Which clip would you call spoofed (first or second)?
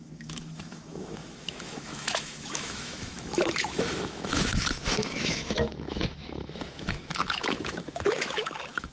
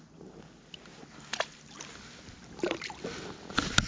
first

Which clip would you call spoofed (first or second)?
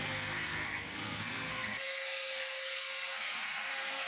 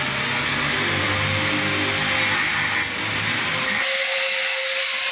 first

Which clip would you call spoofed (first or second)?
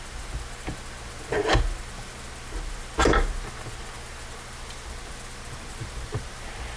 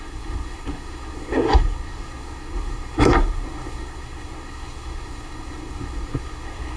second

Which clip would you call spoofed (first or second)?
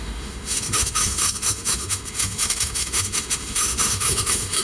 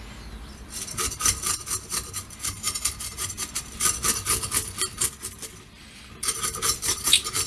first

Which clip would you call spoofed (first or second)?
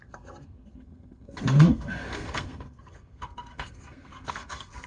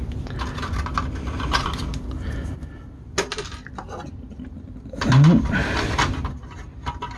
first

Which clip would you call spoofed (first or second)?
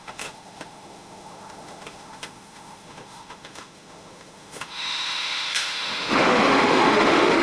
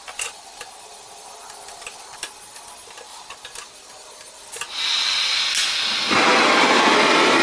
first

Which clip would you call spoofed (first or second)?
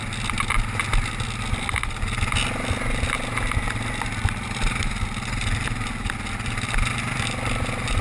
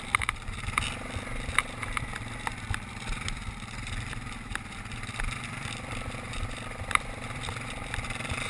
second